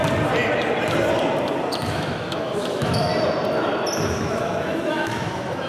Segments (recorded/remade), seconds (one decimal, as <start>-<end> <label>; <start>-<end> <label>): 0.0-1.9 recorded; 1.9-3.1 remade; 3.1-4.2 recorded; 4.2-5.7 remade